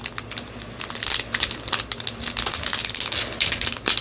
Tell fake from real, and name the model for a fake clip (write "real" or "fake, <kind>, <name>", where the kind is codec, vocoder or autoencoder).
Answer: real